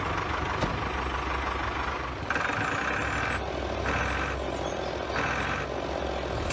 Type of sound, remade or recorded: recorded